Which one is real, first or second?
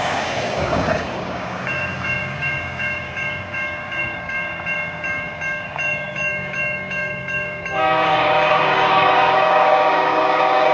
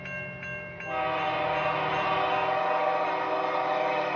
second